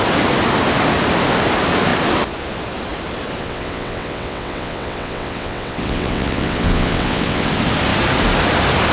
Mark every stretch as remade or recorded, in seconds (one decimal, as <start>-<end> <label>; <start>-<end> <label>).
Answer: 0.0-3.4 recorded; 3.4-7.5 remade; 7.5-8.9 recorded